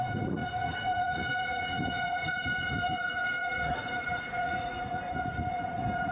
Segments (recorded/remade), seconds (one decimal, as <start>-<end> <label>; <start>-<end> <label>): 0.0-6.1 remade